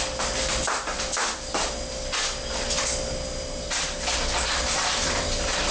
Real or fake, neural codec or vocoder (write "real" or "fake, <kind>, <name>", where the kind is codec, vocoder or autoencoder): real